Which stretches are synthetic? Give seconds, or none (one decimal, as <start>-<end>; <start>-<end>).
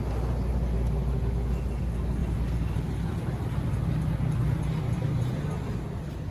none